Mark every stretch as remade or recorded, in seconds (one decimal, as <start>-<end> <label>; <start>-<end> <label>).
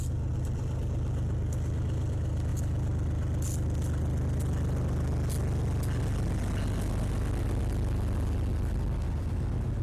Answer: 0.0-9.8 recorded